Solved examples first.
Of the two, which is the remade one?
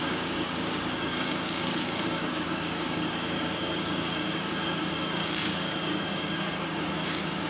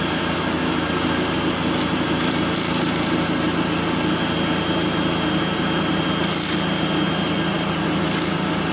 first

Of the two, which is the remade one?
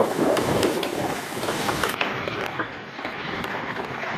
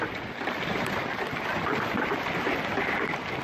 first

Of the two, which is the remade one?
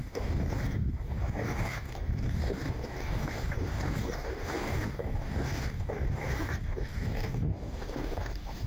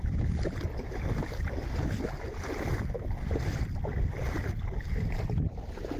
first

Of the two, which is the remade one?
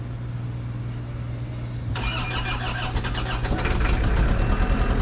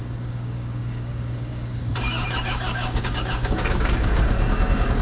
second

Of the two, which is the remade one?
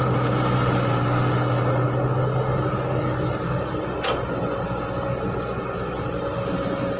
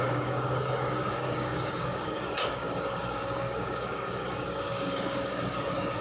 second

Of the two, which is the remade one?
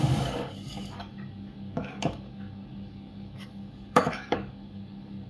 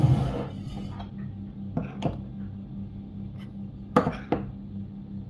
first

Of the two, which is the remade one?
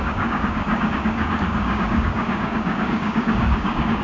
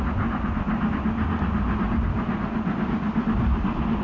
first